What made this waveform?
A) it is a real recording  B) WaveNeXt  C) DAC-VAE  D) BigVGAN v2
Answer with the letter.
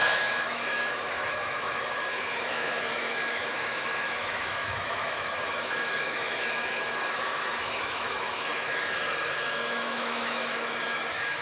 C